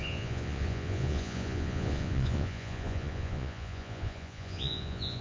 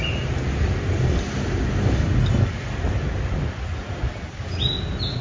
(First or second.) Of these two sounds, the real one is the second